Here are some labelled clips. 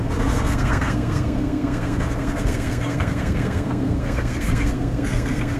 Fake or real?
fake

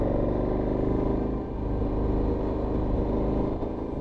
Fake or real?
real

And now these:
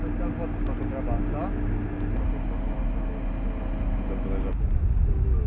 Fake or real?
real